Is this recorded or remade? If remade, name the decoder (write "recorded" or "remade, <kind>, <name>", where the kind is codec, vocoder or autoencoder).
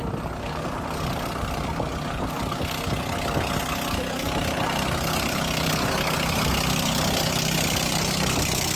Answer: recorded